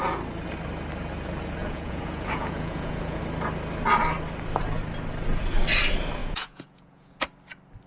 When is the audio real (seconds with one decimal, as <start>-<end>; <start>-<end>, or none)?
0.0-1.6; 3.2-6.2; 7.1-7.9